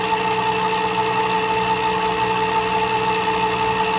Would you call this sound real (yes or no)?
yes